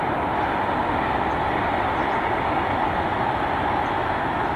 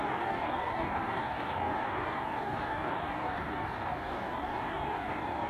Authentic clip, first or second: first